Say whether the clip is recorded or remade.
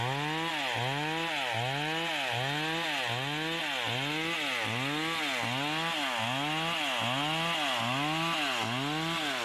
recorded